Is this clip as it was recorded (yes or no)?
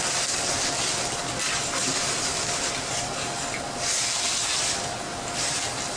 yes